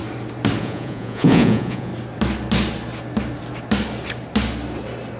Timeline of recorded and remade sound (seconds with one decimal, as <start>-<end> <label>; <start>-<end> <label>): 0.0-0.6 recorded; 0.6-1.9 remade; 1.9-5.2 recorded